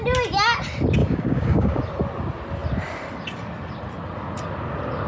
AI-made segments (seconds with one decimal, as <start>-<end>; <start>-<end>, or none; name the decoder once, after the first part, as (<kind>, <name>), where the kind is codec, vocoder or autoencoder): 1.0-1.8 (codec, DAC)